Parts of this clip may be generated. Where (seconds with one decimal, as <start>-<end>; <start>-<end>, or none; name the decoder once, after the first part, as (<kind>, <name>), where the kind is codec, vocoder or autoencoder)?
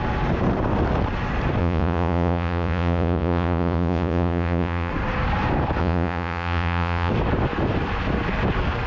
1.6-4.9 (vocoder, Vocos); 5.8-7.1